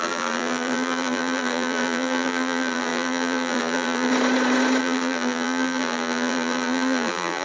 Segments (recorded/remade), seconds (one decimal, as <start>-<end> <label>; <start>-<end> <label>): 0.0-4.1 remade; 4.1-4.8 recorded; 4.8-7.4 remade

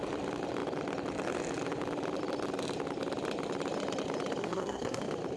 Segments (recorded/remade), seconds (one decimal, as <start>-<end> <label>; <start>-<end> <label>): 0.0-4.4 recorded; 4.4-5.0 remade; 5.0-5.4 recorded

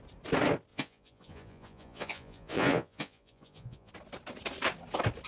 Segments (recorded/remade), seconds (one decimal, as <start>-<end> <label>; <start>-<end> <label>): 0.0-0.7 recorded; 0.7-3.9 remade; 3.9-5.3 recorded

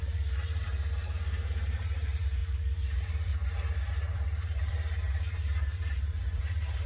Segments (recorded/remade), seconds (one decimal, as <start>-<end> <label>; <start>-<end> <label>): 0.0-0.7 remade; 0.7-1.8 recorded; 1.8-2.4 remade; 2.4-2.9 recorded; 2.9-3.3 remade; 3.3-3.9 recorded; 3.9-6.9 remade

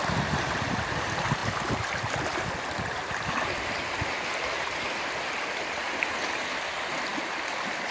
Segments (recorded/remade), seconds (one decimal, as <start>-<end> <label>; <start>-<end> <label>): 0.0-7.9 recorded